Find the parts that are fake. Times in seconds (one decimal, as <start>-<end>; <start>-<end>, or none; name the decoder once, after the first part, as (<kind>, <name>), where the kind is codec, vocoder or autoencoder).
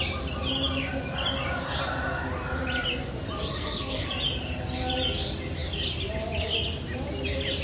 3.5-4.1 (codec, SNAC)